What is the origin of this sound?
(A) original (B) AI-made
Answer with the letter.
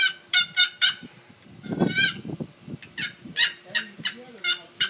B